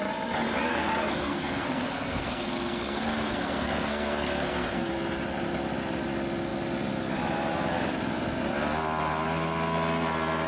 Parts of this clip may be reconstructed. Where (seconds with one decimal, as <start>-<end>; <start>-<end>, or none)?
0.7-4.9